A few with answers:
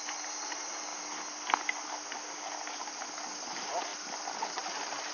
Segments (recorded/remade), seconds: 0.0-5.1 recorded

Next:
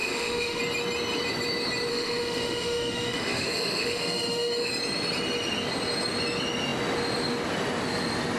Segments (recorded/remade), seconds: 0.0-0.6 remade; 0.6-1.9 recorded; 1.9-4.7 remade; 4.7-8.4 recorded

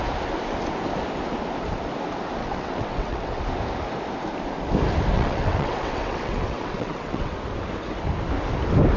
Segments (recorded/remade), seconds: 0.0-2.4 recorded; 2.4-3.4 remade; 3.4-5.1 recorded; 5.1-7.3 remade; 7.3-9.0 recorded

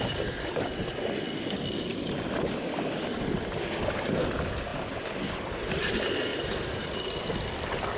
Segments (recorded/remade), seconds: 0.0-8.0 recorded

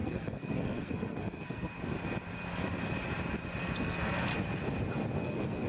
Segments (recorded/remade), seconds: 0.0-1.7 remade; 1.7-3.6 recorded; 3.6-4.3 remade; 4.3-5.2 recorded; 5.2-5.7 remade

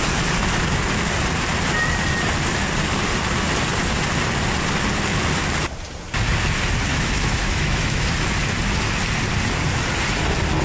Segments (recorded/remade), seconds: 0.0-6.9 recorded; 6.9-8.1 remade; 8.1-10.6 recorded

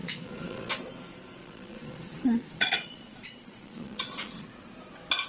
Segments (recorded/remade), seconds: 0.0-0.7 remade; 0.7-1.4 recorded; 1.4-4.6 remade; 4.6-5.3 recorded

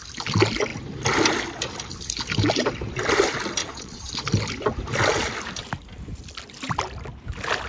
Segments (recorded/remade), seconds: 0.0-3.6 recorded; 3.6-4.1 remade; 4.1-7.7 recorded